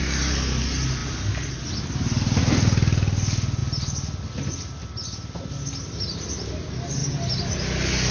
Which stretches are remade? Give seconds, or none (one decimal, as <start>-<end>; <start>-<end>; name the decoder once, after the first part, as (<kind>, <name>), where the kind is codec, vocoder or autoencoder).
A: none